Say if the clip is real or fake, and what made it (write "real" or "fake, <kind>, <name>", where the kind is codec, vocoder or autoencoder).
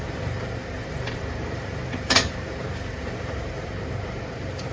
fake, vocoder, BigVGAN v2